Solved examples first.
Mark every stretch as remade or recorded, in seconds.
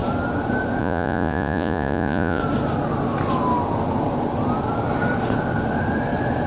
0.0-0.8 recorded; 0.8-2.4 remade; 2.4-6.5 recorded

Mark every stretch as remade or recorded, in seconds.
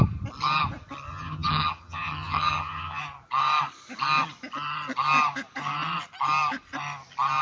0.0-1.1 recorded; 1.1-3.0 remade; 3.0-7.4 recorded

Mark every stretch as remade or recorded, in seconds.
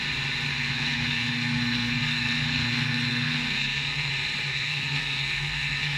0.0-0.5 recorded; 0.5-4.1 remade; 4.1-4.5 recorded; 4.5-6.0 remade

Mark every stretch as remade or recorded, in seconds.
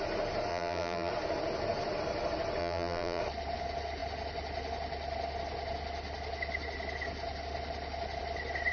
0.0-0.5 recorded; 0.5-1.1 remade; 1.1-2.6 recorded; 2.6-3.2 remade; 3.2-8.7 recorded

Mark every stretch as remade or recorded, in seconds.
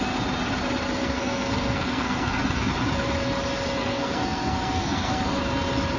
0.0-1.0 recorded; 1.0-2.7 remade; 2.7-3.8 recorded; 3.8-5.4 remade; 5.4-6.0 recorded